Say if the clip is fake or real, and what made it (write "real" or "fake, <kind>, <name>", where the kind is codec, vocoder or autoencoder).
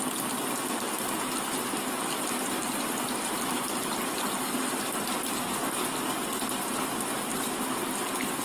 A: real